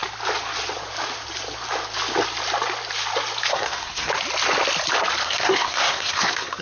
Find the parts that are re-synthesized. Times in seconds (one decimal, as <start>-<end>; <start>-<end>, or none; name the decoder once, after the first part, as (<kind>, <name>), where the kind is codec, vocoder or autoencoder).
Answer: 3.5-4.1 (codec, SNAC); 5.2-6.6